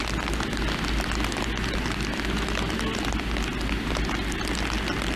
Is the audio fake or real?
real